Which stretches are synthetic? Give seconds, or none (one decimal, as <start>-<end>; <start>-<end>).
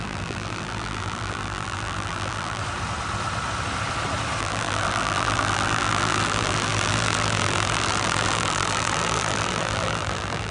0.0-2.6; 4.4-10.5